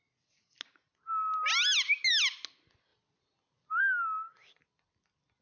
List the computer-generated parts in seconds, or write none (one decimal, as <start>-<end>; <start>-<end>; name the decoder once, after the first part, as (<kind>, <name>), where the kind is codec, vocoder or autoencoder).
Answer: none